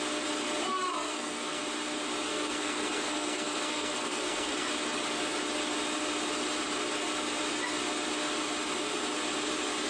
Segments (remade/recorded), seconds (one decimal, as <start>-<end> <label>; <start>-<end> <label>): 0.0-0.8 recorded; 0.8-1.6 remade; 1.6-2.3 recorded; 2.3-4.7 remade; 4.7-9.9 recorded